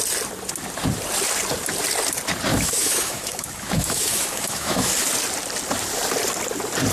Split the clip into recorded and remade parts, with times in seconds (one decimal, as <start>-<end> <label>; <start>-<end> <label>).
0.0-2.5 recorded; 2.5-4.9 remade; 4.9-6.9 recorded